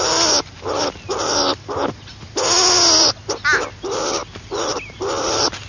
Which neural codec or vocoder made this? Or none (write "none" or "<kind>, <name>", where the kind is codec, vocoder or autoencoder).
none